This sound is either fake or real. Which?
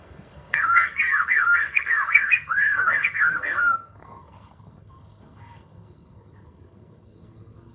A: fake